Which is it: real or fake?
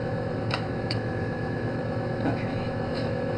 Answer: fake